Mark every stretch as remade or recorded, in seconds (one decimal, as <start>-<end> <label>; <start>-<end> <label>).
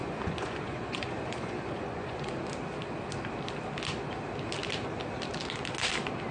0.0-2.4 remade; 2.4-6.3 recorded